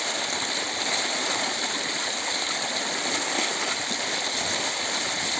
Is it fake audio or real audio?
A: real